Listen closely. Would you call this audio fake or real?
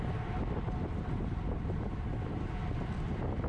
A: real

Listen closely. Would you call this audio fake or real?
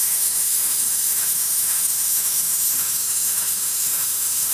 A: fake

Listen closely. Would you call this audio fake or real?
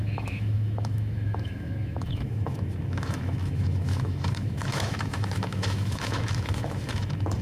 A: fake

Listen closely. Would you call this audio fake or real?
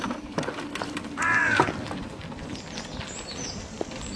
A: real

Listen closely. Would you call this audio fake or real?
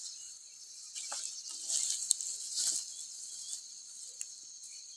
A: real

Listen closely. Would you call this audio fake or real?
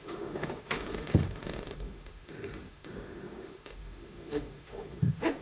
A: fake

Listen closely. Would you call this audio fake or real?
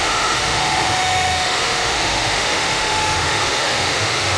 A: fake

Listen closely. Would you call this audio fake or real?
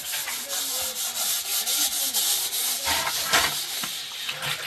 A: real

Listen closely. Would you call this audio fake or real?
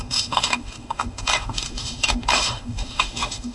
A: fake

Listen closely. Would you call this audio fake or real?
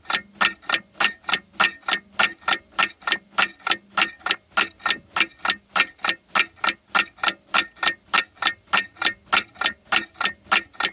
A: real